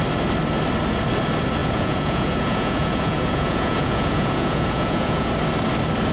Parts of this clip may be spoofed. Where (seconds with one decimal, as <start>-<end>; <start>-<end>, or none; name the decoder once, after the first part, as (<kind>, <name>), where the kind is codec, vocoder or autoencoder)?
1.6-5.3 (vocoder, Vocos)